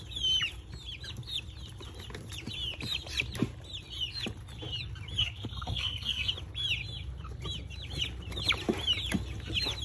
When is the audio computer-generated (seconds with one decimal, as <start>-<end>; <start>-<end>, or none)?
5.2-6.3